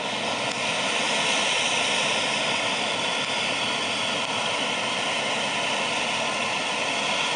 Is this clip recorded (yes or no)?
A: yes